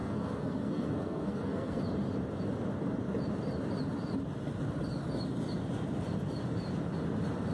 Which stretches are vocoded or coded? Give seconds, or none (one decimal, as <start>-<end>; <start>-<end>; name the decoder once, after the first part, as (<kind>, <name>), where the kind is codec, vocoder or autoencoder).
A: 0.0-1.8 (codec, SNAC)